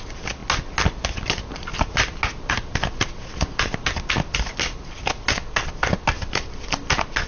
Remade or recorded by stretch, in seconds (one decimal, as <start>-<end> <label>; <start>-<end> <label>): 0.0-7.3 recorded